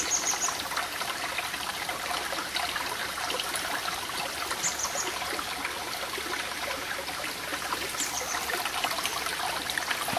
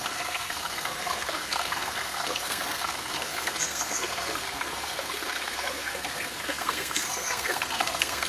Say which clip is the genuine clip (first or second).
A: first